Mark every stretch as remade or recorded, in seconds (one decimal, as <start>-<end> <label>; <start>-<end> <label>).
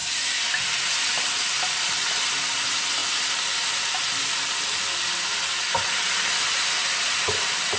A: 0.0-7.8 recorded